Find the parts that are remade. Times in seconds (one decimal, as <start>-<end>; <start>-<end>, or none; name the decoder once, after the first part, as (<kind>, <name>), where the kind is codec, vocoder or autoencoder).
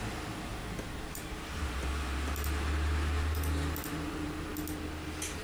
0.5-1.7 (vocoder, BigVGAN v2)